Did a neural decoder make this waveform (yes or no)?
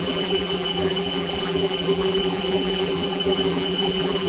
yes